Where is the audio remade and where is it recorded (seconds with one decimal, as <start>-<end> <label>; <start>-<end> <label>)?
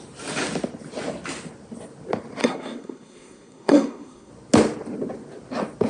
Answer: 0.0-2.4 recorded; 2.4-4.3 remade; 4.3-5.9 recorded